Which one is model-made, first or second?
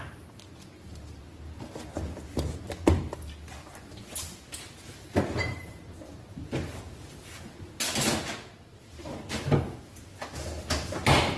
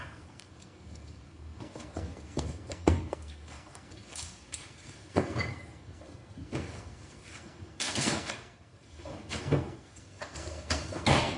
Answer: second